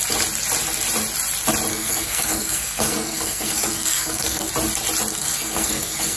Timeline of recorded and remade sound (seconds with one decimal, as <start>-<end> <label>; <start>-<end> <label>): 0.0-1.7 recorded; 1.7-4.5 remade; 4.5-5.1 recorded; 5.1-6.2 remade